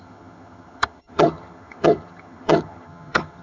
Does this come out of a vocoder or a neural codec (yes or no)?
yes